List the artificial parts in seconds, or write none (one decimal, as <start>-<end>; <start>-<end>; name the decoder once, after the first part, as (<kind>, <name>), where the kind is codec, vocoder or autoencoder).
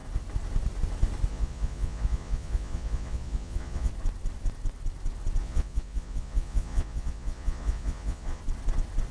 1.3-3.9 (vocoder, Vocos); 5.4-8.4